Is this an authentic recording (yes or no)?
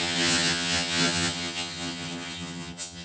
no